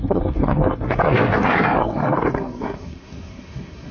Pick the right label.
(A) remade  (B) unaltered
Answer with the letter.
A